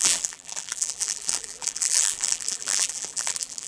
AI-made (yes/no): yes